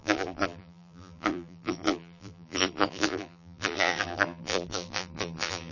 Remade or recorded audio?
remade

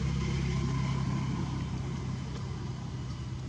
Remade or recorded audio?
recorded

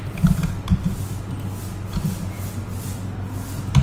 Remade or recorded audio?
recorded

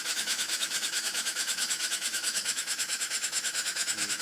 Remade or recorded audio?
remade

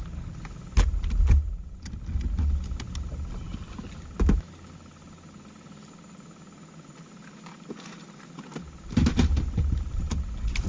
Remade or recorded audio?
recorded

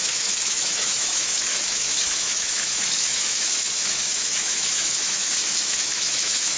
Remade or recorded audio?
remade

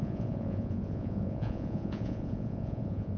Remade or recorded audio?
remade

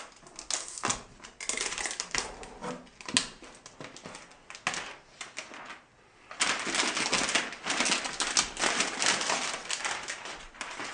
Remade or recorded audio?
recorded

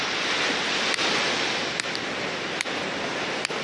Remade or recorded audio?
recorded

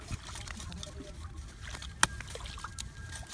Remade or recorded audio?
recorded